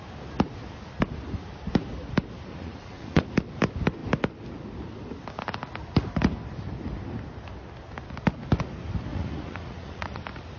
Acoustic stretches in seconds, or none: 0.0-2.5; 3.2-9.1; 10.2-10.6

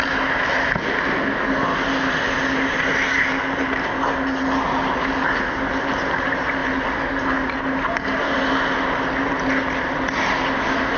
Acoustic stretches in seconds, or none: 0.0-11.0

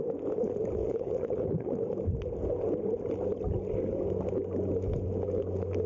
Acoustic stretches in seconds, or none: 0.0-0.8; 1.8-5.9

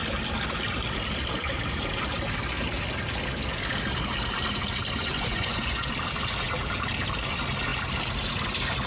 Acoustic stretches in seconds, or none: 0.0-5.0; 5.9-8.9

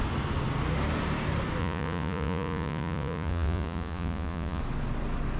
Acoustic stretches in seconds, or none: 0.0-1.6; 4.6-5.4

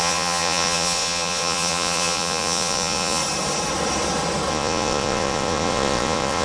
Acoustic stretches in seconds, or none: 3.2-4.5